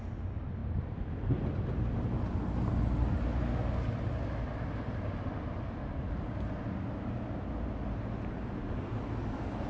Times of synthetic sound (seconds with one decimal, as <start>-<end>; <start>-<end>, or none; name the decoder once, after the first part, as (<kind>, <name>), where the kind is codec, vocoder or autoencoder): 0.6-1.1 (vocoder, BigVGAN v2)